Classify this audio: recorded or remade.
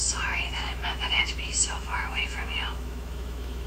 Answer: remade